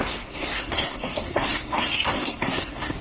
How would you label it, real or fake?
fake